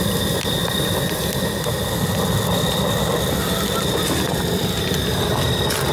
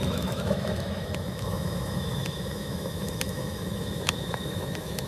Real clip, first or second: first